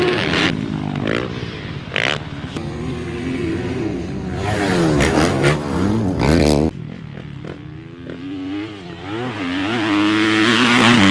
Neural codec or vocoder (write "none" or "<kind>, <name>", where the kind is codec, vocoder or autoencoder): none